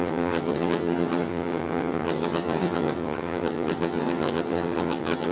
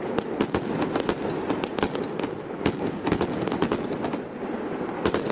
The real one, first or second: second